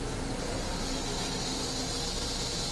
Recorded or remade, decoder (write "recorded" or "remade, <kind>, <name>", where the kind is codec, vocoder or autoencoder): recorded